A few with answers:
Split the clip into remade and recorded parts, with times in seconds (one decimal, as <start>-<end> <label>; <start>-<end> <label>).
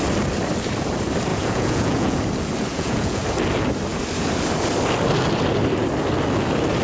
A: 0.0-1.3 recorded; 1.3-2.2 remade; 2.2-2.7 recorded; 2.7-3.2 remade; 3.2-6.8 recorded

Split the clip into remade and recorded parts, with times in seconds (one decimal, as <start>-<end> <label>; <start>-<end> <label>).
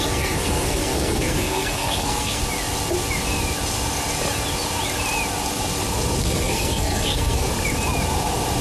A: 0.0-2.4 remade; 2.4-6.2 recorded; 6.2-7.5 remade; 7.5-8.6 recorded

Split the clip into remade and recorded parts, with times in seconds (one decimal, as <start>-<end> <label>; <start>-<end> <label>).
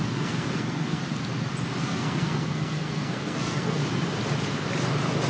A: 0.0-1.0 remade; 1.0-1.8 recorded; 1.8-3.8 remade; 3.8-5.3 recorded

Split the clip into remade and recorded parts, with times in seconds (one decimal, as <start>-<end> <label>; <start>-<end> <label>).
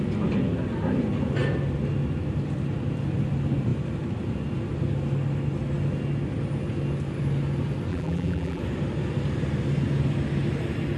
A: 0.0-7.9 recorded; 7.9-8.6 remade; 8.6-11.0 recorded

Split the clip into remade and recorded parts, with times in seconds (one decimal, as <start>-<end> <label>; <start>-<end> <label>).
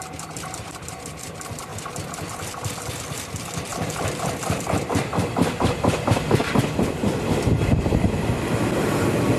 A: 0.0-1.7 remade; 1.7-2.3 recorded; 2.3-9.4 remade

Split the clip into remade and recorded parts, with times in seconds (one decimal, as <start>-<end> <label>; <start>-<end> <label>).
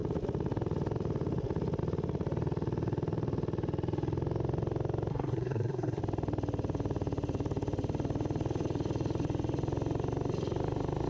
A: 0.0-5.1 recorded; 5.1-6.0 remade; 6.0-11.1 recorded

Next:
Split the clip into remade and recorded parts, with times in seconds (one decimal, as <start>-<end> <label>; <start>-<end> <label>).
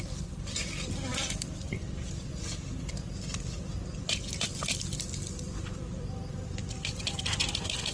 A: 0.0-7.9 remade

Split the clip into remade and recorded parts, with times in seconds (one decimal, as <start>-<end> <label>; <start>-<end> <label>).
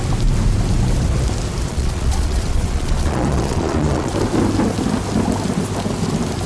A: 0.0-1.7 recorded; 1.7-4.1 remade; 4.1-6.5 recorded